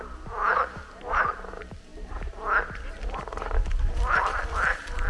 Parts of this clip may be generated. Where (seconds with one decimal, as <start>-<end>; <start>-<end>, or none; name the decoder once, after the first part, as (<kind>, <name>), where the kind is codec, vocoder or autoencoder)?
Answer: 0.0-0.4 (vocoder, BigVGAN v2); 1.3-5.1